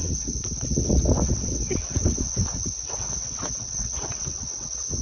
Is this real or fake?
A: fake